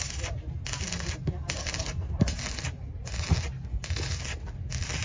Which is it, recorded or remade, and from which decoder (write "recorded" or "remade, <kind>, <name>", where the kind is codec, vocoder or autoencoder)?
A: recorded